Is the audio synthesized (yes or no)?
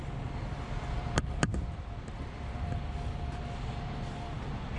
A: no